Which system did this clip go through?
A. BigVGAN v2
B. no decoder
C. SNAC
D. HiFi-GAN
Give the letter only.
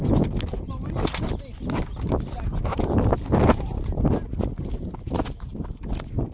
B